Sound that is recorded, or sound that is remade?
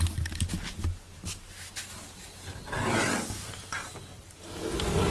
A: recorded